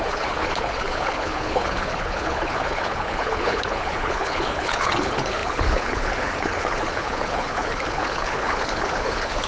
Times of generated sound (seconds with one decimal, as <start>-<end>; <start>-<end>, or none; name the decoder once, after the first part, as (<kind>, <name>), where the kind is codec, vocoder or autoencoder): 0.0-9.5 (codec, HILCodec)